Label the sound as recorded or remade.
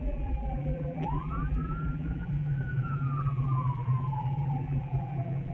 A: remade